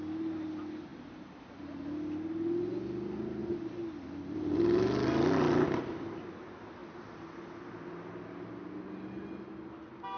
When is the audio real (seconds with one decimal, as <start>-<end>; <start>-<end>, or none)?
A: 0.0-0.9; 1.6-3.4; 6.3-10.2